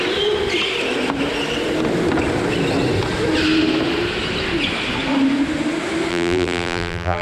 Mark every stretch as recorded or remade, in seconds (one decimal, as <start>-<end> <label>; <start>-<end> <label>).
0.0-6.1 recorded; 6.1-7.2 remade